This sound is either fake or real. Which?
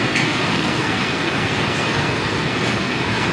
fake